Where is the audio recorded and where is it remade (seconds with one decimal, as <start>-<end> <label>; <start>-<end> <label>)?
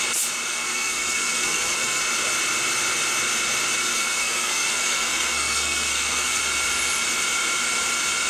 0.0-0.5 recorded; 0.5-2.0 remade; 2.0-3.8 recorded; 3.8-6.4 remade; 6.4-8.3 recorded